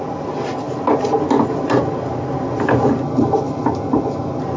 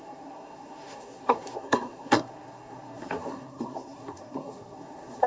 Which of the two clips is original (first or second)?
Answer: first